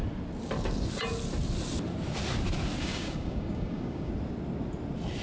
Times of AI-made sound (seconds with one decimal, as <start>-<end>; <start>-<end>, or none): 2.8-4.1

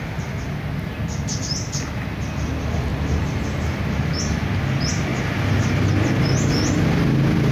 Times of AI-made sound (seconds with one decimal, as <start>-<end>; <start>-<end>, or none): 2.9-4.2